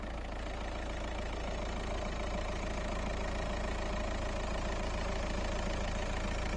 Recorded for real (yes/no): yes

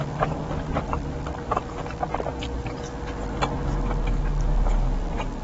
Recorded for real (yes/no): yes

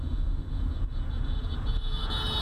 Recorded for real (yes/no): no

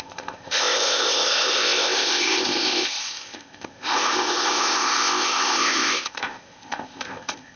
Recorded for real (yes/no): no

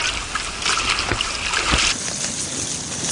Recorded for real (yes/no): yes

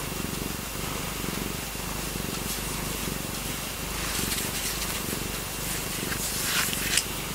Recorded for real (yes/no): yes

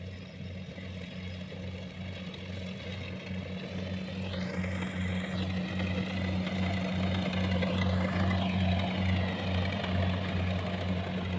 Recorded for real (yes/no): yes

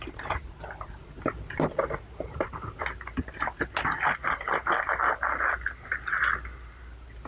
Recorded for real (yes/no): yes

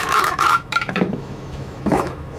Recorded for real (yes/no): no